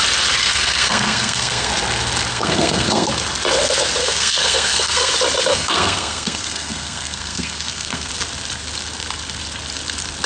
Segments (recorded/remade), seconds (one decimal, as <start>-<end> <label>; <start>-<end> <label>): 0.0-0.4 recorded; 0.4-1.7 remade; 1.7-2.3 recorded; 2.3-3.1 remade; 3.1-4.0 recorded; 4.0-5.1 remade; 5.1-5.5 recorded; 5.5-8.1 remade; 8.1-10.3 recorded